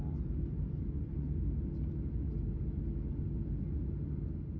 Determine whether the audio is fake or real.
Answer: real